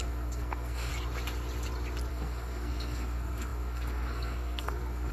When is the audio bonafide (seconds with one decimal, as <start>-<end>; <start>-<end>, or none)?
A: 0.9-2.1